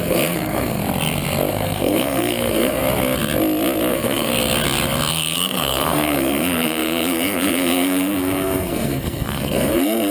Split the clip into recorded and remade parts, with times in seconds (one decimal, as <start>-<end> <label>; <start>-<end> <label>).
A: 0.0-0.8 remade; 0.8-1.5 recorded; 1.5-2.8 remade; 2.8-3.9 recorded; 3.9-4.3 remade; 4.3-5.1 recorded; 5.1-10.1 remade